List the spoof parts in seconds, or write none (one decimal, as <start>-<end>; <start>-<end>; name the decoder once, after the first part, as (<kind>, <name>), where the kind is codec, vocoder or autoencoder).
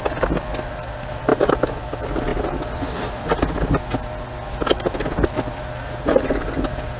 none